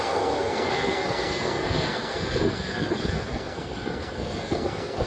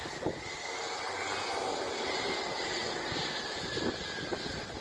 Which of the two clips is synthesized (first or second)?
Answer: first